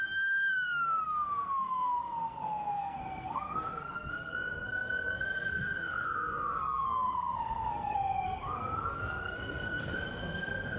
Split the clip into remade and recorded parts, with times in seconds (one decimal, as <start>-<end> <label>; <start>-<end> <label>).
0.0-10.8 remade